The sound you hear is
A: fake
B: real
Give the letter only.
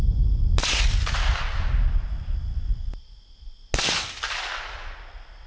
B